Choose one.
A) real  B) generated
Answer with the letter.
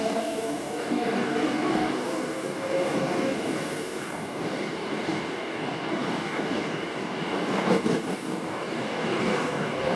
B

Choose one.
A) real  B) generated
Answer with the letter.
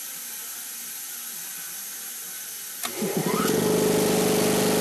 A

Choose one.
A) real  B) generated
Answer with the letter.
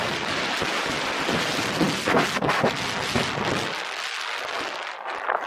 A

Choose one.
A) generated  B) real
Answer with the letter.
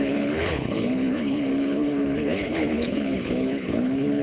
A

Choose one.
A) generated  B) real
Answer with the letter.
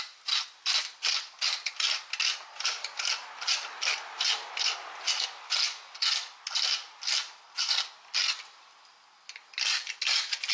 B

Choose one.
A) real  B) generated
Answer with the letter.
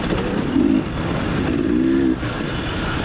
A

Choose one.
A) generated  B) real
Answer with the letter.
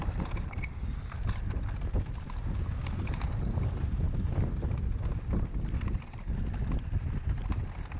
B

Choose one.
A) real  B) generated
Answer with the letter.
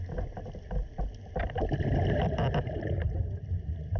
A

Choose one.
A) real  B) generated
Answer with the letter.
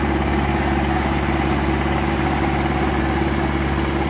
A